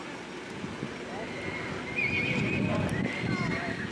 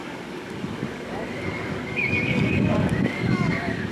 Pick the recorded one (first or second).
first